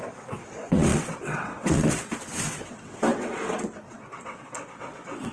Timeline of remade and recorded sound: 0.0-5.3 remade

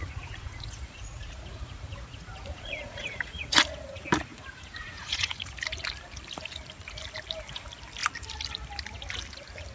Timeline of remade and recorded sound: 0.0-3.6 remade; 3.6-4.3 recorded; 4.3-5.5 remade; 5.5-9.7 recorded